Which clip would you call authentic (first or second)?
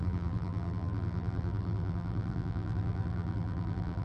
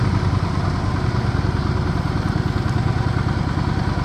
second